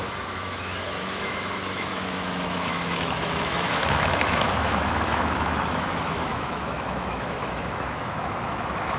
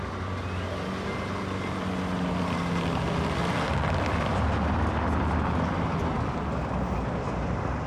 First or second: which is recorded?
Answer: second